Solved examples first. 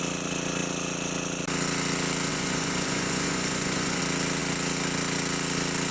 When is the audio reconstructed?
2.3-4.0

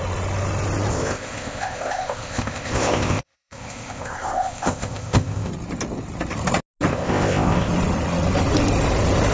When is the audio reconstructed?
0.9-5.5; 6.9-7.7

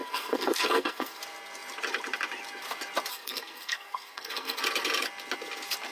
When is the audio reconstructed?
0.0-1.2; 3.1-4.6

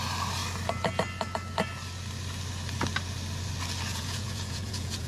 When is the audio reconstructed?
3.9-5.1

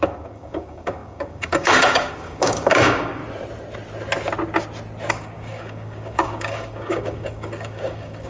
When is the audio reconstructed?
0.0-3.2; 5.1-8.3

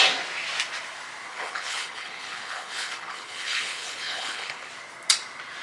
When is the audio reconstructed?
1.3-4.7

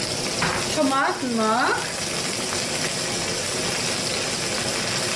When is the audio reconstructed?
none

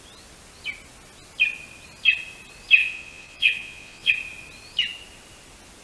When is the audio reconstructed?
2.8-4.1